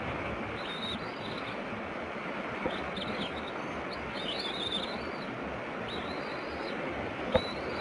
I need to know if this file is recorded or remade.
recorded